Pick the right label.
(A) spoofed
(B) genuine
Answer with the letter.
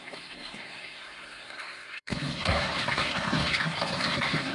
A